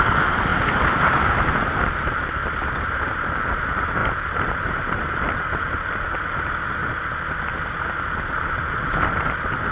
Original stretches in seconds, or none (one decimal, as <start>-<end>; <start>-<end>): 0.5-3.4

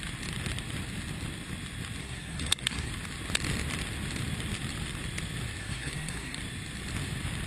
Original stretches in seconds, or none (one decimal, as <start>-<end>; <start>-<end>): 0.0-2.0; 2.9-5.6; 6.4-7.5

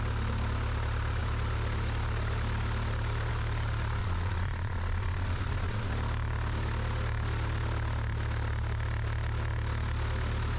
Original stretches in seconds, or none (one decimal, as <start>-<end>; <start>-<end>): 0.0-4.0; 5.9-10.6